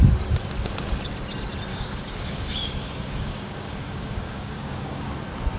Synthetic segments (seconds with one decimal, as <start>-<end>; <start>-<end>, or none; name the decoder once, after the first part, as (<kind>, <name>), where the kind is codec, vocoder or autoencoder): 1.7-5.1 (codec, DAC)